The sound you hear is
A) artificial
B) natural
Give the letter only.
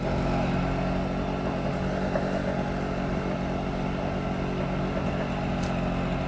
B